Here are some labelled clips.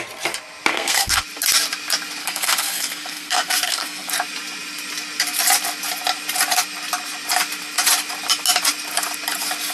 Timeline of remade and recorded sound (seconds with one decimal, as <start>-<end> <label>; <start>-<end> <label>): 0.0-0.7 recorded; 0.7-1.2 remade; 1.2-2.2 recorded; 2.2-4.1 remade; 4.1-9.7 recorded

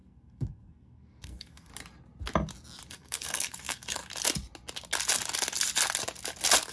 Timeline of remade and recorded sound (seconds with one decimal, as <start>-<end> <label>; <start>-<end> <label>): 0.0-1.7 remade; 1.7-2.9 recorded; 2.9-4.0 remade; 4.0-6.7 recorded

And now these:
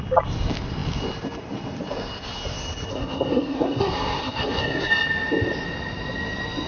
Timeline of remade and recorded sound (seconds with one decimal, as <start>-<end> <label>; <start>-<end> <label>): 0.0-2.9 recorded; 2.9-4.9 remade; 4.9-6.7 recorded

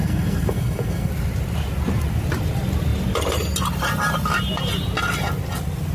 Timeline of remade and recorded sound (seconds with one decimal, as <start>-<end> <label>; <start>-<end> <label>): 0.0-1.1 remade; 1.1-5.9 recorded

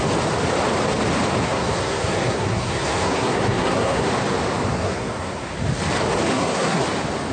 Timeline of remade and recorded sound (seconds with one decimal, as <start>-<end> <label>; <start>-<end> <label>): 0.0-1.4 recorded; 1.4-4.1 remade; 4.1-4.7 recorded; 4.7-5.5 remade; 5.5-6.3 recorded; 6.3-6.8 remade; 6.8-7.3 recorded